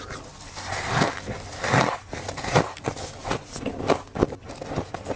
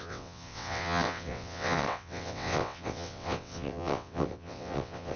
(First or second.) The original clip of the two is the first